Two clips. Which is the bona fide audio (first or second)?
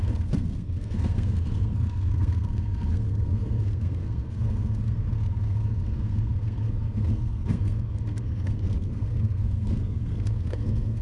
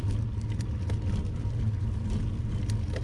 second